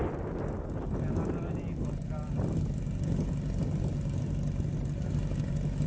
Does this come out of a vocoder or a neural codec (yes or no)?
no